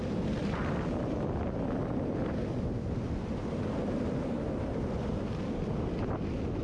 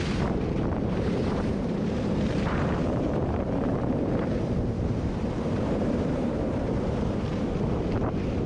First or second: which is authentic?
first